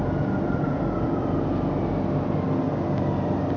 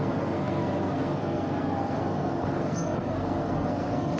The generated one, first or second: second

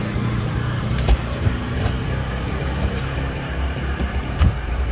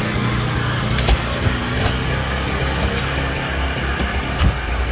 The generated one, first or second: first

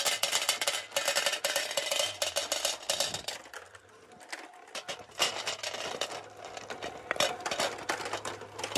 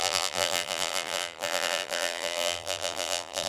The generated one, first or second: second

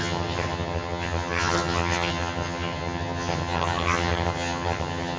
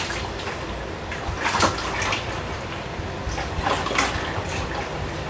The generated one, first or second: first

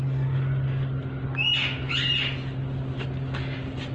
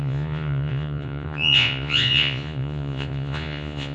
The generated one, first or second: second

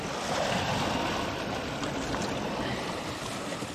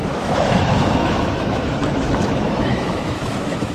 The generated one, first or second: second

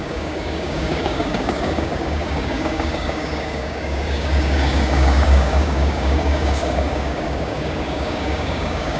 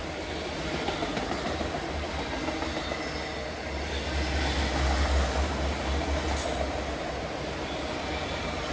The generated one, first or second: first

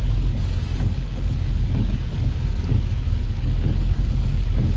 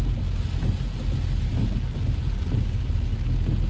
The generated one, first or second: first